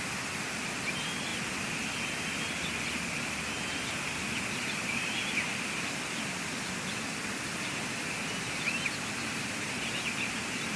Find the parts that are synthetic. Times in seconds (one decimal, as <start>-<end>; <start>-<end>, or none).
0.0-1.3; 4.9-10.8